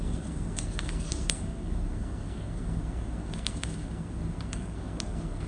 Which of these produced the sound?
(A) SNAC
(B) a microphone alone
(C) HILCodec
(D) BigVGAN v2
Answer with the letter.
A